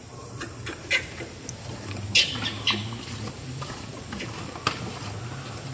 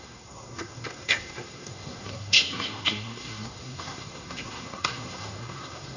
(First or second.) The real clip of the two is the first